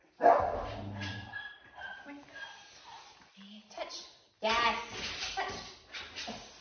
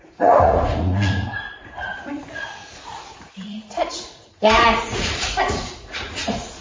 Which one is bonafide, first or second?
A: first